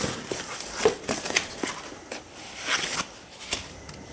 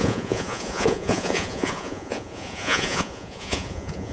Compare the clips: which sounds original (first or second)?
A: first